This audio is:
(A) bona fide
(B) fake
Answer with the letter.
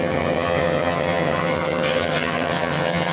B